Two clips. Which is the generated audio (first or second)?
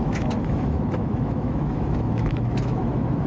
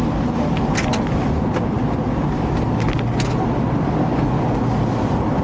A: first